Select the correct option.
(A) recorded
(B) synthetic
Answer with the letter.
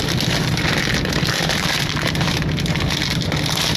A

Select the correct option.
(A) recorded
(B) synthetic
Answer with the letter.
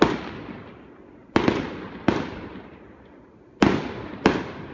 A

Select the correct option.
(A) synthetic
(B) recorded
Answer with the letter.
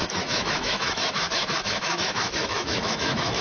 A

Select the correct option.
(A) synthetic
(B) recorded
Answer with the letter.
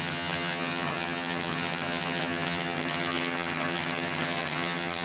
A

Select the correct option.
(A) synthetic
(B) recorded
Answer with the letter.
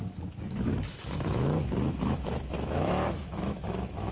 A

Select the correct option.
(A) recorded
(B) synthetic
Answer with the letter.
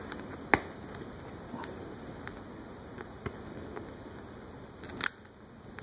A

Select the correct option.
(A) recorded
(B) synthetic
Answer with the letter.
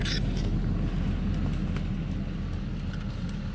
A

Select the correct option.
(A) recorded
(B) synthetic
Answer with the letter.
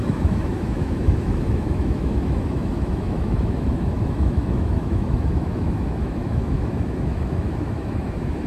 B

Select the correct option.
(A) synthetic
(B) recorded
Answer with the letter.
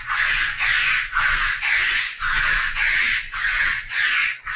A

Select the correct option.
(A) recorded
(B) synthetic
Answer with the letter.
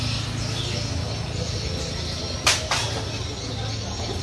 A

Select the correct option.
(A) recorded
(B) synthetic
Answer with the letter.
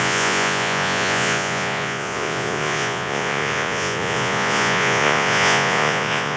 B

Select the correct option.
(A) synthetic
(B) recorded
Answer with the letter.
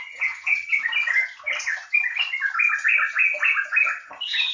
B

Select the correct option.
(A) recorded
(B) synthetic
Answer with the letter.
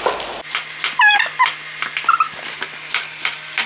A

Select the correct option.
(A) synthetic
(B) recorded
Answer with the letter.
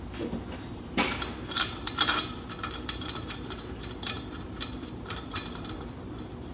A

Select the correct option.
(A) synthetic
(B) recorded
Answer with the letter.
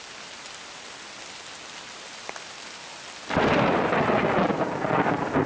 B